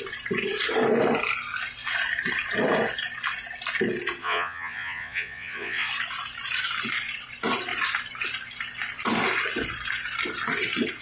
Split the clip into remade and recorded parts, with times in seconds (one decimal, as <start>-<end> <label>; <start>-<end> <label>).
0.0-4.2 recorded; 4.2-5.9 remade; 5.9-11.0 recorded